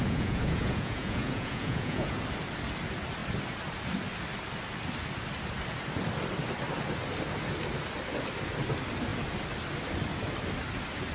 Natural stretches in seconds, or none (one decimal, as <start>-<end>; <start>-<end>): 2.2-11.1